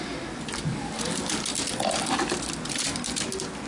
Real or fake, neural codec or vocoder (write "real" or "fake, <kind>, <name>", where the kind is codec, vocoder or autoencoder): real